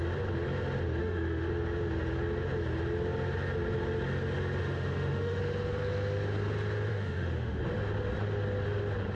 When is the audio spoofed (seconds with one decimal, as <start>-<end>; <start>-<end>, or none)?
1.0-1.5; 4.6-5.4; 6.9-7.6